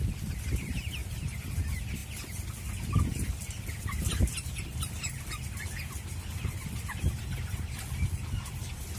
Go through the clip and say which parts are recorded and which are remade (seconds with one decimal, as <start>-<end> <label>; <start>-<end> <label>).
0.0-2.0 remade; 2.0-3.8 recorded; 3.8-9.0 remade